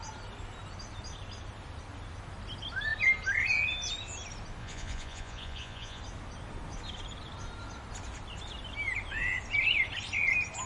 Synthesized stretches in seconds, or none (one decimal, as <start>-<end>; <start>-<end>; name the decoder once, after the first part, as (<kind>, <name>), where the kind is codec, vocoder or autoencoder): 4.6-6.0 (vocoder, Vocos)